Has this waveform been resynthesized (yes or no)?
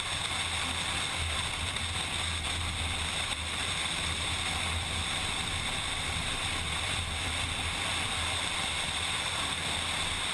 no